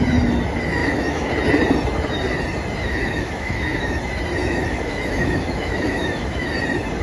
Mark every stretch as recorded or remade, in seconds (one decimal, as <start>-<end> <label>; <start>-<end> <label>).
0.0-0.8 recorded; 0.8-1.3 remade; 1.3-2.8 recorded; 2.8-4.0 remade; 4.0-4.4 recorded; 4.4-6.5 remade; 6.5-7.0 recorded